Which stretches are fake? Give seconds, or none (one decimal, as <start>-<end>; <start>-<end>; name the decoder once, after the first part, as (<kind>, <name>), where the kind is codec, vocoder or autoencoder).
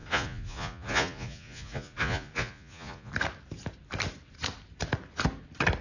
0.0-3.1 (vocoder, Vocos)